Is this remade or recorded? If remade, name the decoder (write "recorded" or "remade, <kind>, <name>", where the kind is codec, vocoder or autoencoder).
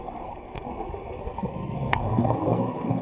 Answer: remade, codec, SNAC